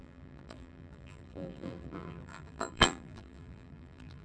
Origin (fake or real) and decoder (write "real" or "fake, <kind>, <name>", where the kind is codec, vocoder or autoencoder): fake, vocoder, BigVGAN v2